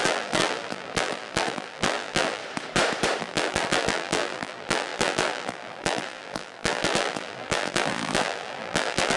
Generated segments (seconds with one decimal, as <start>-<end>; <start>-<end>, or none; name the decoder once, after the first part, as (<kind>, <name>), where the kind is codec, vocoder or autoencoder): 0.0-2.4 (vocoder, BigVGAN v2); 3.2-9.2